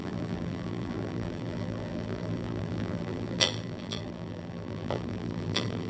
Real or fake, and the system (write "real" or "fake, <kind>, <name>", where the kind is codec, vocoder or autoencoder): fake, vocoder, BigVGAN v2